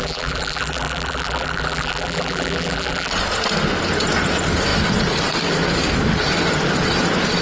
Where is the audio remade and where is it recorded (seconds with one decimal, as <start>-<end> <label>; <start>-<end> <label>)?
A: 0.0-3.1 remade; 3.1-7.4 recorded